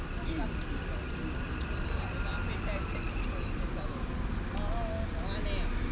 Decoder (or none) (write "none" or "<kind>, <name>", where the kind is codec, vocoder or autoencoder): none